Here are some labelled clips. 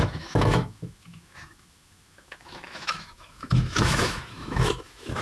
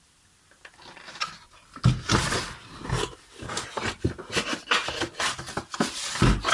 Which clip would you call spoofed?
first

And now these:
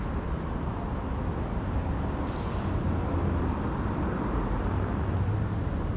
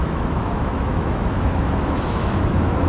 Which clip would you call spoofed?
second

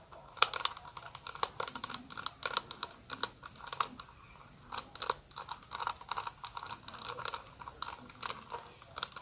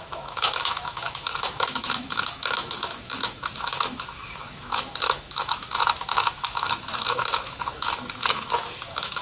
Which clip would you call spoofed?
second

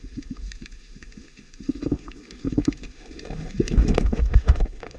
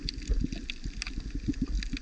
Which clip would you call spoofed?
first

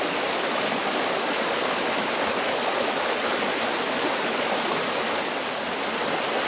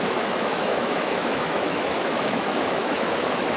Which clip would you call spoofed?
second